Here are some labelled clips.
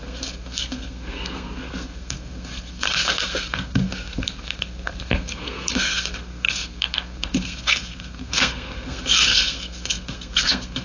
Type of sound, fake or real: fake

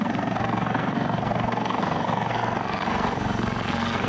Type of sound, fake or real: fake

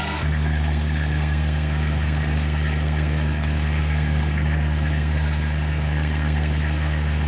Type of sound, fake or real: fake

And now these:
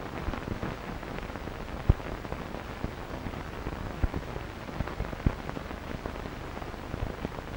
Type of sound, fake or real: real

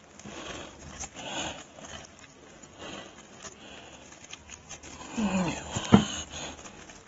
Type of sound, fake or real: real